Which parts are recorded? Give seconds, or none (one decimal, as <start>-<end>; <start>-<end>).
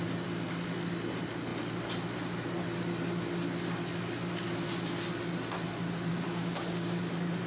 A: 0.0-6.1; 7.0-7.5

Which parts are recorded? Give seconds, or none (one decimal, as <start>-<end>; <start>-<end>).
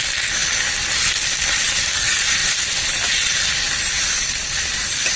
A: 0.0-0.4; 0.9-5.2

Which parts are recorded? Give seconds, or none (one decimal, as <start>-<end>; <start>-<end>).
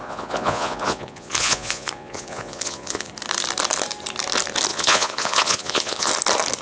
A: 3.1-4.7; 6.1-6.6